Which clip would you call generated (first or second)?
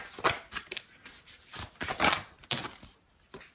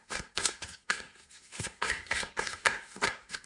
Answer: second